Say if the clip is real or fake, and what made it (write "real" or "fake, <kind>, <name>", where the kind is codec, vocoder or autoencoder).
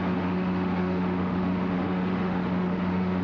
fake, autoencoder, DAC-VAE